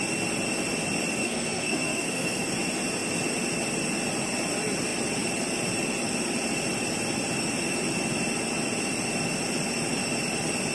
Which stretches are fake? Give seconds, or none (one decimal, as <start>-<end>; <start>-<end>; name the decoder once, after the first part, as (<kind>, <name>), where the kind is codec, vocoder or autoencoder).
1.2-2.5 (codec, SNAC)